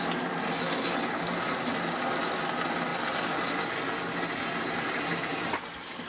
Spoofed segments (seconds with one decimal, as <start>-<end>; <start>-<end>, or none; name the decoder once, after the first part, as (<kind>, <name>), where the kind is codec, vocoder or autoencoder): none